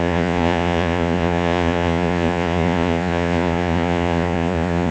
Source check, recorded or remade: remade